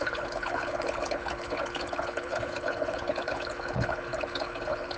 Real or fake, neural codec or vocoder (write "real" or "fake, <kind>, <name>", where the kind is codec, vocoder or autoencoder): fake, codec, HILCodec